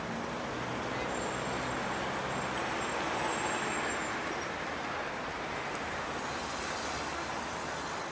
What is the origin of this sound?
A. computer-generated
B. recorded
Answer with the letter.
B